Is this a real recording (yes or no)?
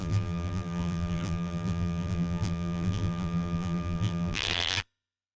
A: no